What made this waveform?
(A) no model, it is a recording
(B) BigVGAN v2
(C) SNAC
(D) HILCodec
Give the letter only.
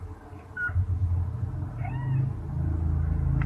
A